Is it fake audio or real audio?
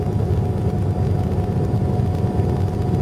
real